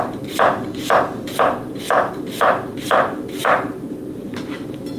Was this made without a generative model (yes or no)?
no